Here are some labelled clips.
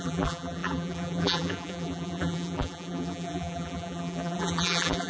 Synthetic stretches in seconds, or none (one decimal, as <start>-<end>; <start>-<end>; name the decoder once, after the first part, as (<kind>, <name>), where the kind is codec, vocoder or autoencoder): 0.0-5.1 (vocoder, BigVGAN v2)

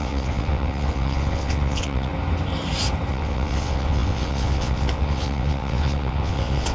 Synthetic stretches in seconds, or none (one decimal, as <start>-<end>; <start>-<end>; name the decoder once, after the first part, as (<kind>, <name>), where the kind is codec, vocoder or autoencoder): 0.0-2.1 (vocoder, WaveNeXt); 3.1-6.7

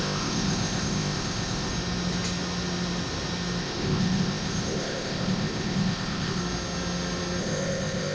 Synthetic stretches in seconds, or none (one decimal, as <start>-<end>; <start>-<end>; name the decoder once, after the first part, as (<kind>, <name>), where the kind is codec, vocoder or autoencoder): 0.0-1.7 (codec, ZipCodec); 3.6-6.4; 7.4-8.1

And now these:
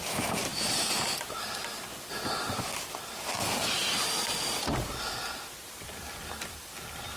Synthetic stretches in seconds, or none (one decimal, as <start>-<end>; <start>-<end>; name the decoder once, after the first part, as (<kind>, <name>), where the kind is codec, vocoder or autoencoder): none

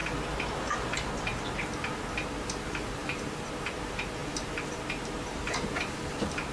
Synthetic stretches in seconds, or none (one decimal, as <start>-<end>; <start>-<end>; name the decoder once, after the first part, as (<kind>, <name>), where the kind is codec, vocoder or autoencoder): 0.6-6.5 (vocoder, BigVGAN v2)

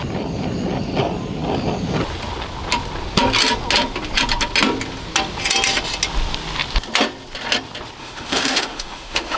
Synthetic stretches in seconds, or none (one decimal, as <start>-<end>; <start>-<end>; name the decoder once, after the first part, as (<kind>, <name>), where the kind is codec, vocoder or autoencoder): 8.0-9.4 (autoencoder, DAC-VAE)

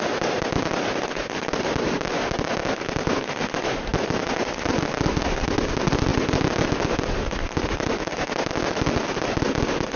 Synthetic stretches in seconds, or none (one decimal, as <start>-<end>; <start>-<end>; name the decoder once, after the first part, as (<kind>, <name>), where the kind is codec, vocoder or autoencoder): none

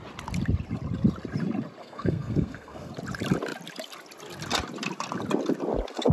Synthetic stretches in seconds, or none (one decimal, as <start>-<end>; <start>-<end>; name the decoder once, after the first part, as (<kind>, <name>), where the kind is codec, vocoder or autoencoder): 1.8-2.9 (codec, SNAC)